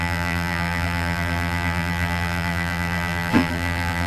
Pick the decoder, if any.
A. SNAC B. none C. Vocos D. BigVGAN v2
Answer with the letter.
D